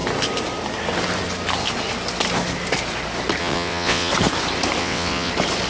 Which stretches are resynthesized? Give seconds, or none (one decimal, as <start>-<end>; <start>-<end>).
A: 3.4-4.1; 4.8-5.3

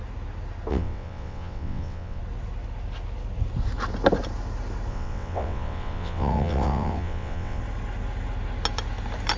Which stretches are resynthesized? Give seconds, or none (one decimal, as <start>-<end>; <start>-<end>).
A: 0.7-2.2; 4.9-7.6

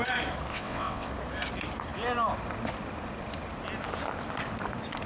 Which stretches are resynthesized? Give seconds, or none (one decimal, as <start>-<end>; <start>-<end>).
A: 0.5-1.1

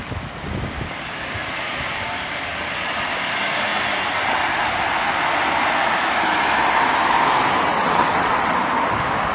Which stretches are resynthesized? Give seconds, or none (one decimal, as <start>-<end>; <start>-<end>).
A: 7.7-8.5

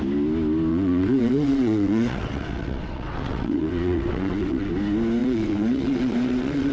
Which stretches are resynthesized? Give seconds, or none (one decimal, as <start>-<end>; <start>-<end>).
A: 0.7-4.7; 5.2-6.7

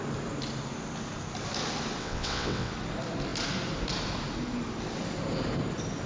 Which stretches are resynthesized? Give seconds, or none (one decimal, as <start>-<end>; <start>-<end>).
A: 2.0-2.7